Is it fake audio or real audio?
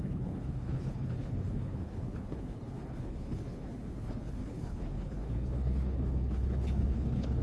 fake